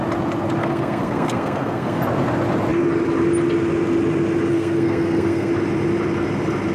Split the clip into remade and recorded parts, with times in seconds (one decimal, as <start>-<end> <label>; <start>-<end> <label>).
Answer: 0.0-0.6 recorded; 0.6-2.0 remade; 2.0-4.5 recorded; 4.5-5.5 remade; 5.5-6.7 recorded